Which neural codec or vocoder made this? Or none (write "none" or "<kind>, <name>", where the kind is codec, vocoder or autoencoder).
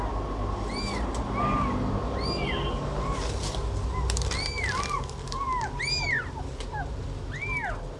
none